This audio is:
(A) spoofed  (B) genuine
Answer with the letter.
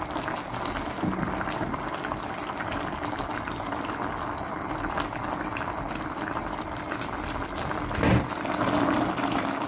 B